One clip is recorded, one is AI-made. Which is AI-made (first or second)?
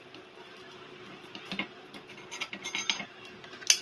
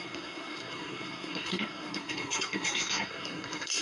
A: second